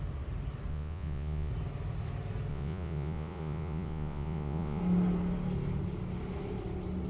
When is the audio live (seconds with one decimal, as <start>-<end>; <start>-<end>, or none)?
0.0-0.7; 1.5-2.5; 4.8-7.1